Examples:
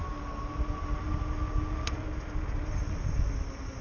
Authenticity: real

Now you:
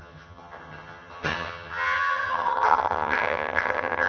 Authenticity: fake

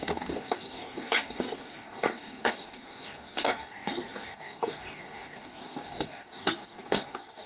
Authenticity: fake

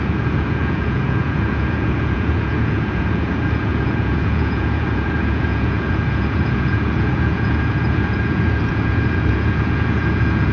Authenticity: fake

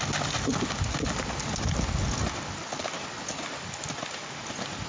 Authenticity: real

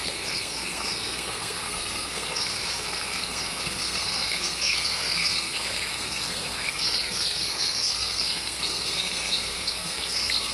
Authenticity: fake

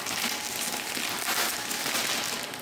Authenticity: real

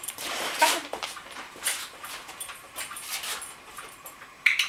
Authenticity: fake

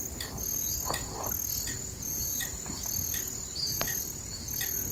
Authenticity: real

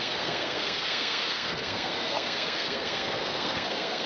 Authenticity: fake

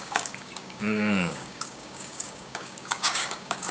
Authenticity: fake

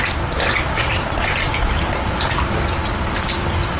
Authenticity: real